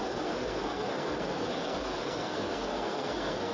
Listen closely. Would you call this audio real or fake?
fake